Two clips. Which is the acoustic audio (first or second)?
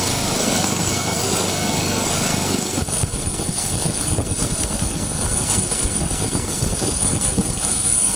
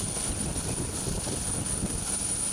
second